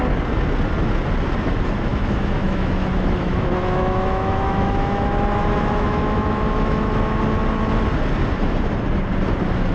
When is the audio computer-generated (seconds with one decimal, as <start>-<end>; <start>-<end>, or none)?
1.9-6.9